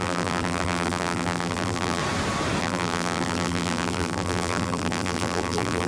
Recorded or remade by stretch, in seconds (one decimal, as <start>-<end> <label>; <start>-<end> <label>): 0.0-2.0 remade; 2.0-2.6 recorded; 2.6-5.9 remade